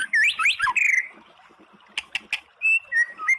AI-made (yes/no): no